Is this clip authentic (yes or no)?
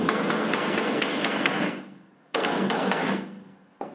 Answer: no